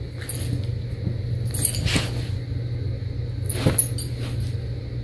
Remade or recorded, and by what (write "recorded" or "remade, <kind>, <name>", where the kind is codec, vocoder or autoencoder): recorded